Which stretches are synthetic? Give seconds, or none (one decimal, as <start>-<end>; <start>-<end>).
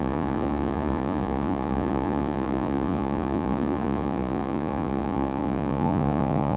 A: 0.0-6.6